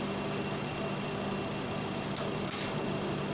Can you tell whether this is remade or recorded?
recorded